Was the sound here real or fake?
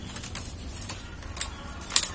real